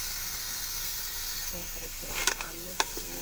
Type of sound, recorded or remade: remade